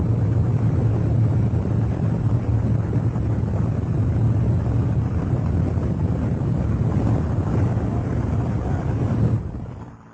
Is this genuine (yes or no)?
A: no